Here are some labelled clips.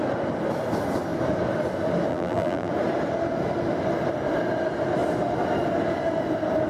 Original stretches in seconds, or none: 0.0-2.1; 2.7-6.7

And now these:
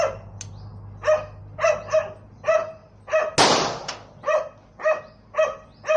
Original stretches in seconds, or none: 0.0-6.0

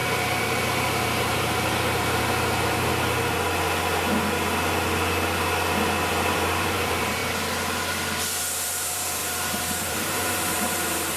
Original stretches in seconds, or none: 2.9-6.1; 7.2-8.4

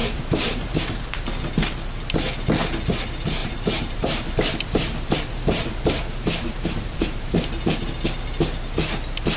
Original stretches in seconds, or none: 1.2-3.4; 7.5-9.4

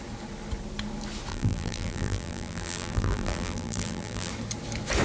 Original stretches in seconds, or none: 0.0-1.3; 4.3-5.0